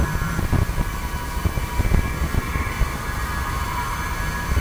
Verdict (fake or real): real